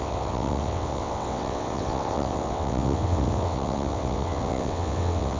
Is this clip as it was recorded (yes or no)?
no